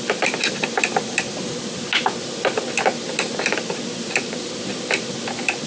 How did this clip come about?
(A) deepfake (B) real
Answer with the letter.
B